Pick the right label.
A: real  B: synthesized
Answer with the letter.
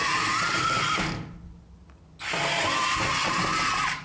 A